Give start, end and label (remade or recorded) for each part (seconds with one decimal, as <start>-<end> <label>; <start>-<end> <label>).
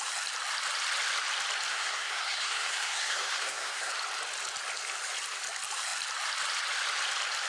0.0-1.7 recorded; 1.7-3.9 remade; 3.9-7.5 recorded